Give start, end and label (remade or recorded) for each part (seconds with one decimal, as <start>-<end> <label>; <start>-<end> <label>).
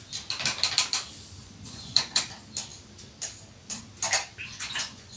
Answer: 0.0-1.4 recorded; 1.4-2.2 remade; 2.2-4.4 recorded; 4.4-5.2 remade